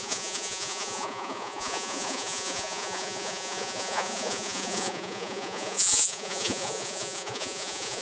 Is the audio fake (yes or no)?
yes